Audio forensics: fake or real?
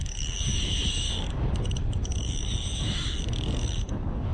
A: fake